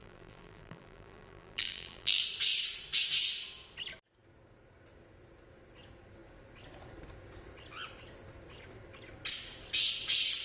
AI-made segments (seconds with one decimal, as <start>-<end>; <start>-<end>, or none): 0.0-2.2

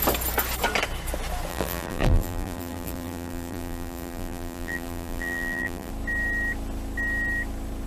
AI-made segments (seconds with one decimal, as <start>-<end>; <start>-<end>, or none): 1.5-5.9